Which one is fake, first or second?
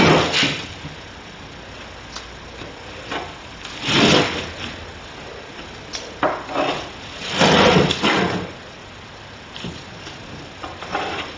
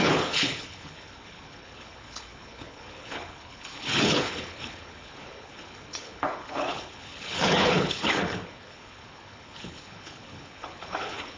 second